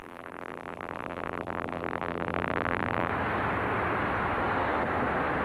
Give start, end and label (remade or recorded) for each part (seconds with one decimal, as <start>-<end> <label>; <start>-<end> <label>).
0.0-3.1 remade; 3.1-5.4 recorded